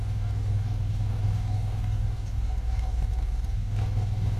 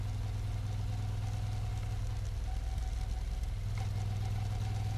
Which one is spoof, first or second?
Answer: first